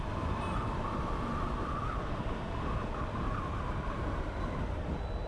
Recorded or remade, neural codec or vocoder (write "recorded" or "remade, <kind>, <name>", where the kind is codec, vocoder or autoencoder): recorded